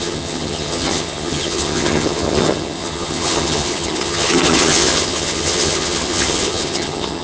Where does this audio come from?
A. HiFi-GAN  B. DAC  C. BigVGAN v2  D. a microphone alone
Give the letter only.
A